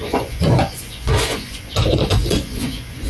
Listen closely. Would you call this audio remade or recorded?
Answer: remade